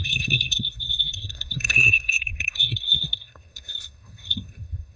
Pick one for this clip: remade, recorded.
remade